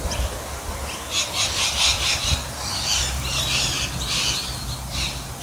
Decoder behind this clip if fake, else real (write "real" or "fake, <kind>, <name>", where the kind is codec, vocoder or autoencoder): real